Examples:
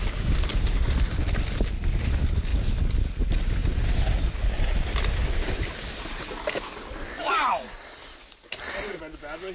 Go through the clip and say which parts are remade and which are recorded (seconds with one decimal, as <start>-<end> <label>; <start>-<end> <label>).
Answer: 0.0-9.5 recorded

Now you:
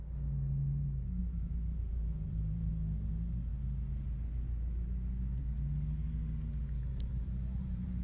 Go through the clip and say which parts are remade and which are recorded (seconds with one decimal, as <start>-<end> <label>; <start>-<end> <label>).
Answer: 0.0-1.2 recorded; 1.2-2.7 remade; 2.7-6.6 recorded; 6.6-8.0 remade

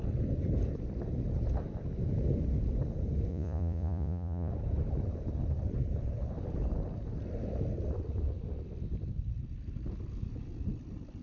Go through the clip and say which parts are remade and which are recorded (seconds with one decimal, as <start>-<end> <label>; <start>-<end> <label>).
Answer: 0.0-3.3 recorded; 3.3-4.5 remade; 4.5-11.2 recorded

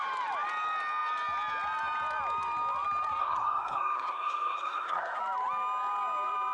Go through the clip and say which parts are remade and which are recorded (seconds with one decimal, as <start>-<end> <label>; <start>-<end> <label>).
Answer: 0.0-3.2 recorded; 3.2-5.2 remade; 5.2-6.5 recorded

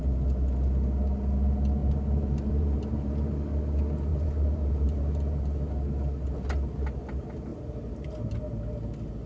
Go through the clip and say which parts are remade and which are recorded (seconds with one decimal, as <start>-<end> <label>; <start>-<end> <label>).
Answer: 0.0-1.8 recorded; 1.8-3.1 remade; 3.1-4.1 recorded; 4.1-5.7 remade; 5.7-9.3 recorded

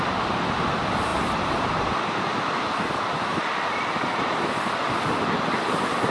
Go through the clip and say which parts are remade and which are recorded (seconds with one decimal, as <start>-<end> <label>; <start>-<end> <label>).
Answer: 0.0-1.1 recorded; 1.1-2.2 remade; 2.2-4.1 recorded; 4.1-4.7 remade; 4.7-6.1 recorded